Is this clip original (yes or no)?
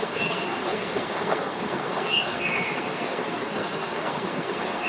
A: no